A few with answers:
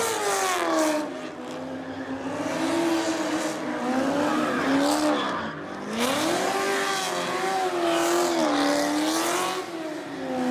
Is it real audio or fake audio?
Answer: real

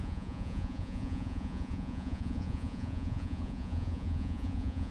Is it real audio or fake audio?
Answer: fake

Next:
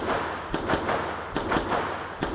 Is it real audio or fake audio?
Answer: real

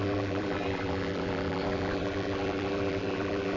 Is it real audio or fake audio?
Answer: fake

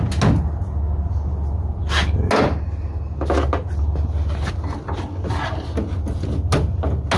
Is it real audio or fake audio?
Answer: real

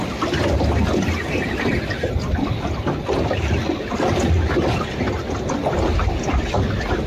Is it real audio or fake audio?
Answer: real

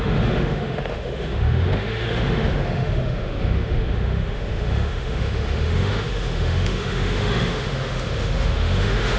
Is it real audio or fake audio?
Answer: fake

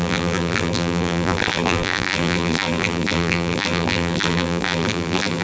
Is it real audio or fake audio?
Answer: fake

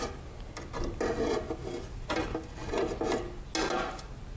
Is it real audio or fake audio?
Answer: real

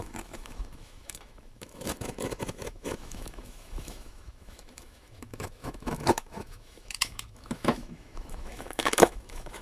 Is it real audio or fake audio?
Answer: fake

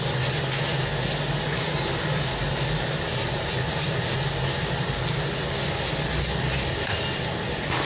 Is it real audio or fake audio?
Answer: real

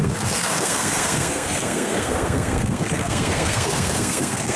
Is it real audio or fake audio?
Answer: fake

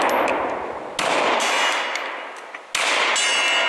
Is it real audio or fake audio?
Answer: real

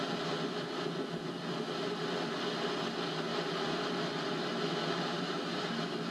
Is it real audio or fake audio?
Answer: real